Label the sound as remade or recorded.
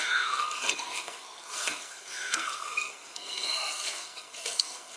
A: remade